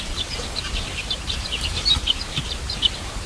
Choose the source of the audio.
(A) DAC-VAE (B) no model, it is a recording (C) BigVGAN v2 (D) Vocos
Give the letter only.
C